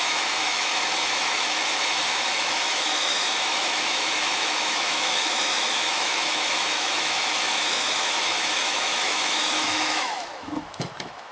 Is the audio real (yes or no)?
no